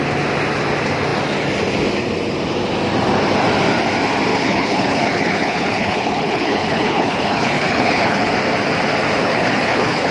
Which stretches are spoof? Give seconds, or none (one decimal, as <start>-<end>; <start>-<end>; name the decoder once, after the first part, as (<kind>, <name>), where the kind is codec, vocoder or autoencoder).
4.3-8.3 (codec, HILCodec); 9.2-10.1

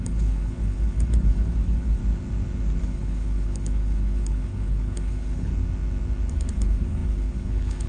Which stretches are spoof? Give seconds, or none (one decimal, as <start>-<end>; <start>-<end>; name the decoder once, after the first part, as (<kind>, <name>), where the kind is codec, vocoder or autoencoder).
0.0-2.0 (codec, HILCodec); 2.8-5.5; 6.3-7.9